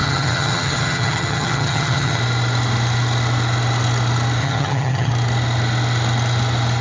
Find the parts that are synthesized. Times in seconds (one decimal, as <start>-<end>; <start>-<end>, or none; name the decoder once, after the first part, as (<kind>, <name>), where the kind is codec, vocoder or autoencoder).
0.0-2.2 (vocoder, HiFi-GAN); 4.4-5.1